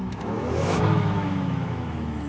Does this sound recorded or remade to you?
remade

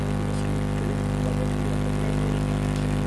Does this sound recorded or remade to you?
recorded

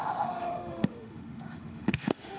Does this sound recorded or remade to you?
remade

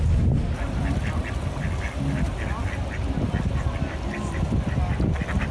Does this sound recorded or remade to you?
recorded